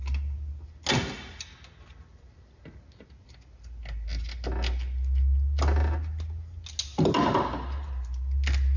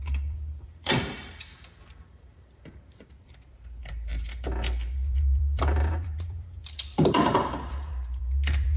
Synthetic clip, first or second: second